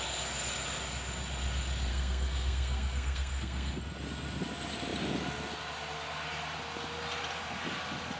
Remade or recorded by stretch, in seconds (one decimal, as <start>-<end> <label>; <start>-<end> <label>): 0.0-1.9 recorded; 1.9-3.8 remade; 3.8-8.2 recorded